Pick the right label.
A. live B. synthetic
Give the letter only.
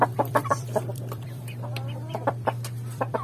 B